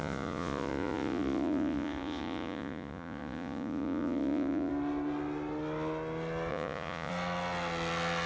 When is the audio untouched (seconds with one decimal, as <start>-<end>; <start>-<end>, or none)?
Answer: 4.7-6.5; 7.1-8.3